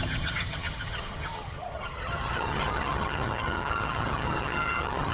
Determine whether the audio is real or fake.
fake